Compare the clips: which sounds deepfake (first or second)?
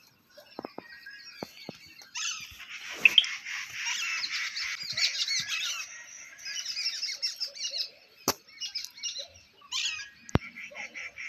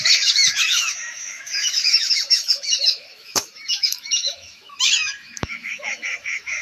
second